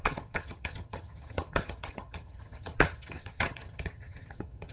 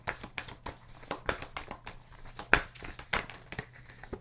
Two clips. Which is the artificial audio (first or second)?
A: first